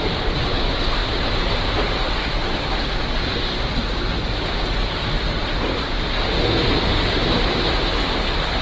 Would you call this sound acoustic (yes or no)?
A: yes